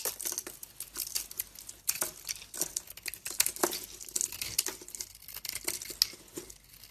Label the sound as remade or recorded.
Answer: recorded